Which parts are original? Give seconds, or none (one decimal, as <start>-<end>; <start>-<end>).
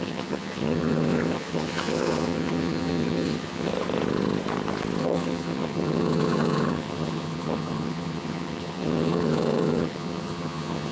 3.7-5.0